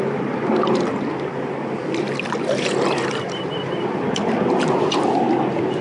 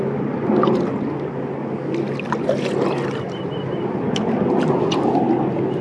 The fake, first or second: first